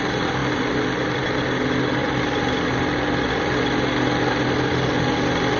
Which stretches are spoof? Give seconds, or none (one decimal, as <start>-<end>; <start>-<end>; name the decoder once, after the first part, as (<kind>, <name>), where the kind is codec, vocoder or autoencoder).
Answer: none